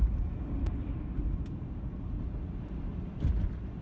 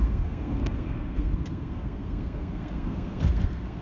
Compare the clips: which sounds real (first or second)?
first